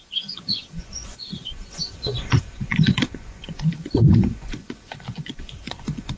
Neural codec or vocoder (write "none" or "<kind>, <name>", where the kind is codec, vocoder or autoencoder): vocoder, Vocos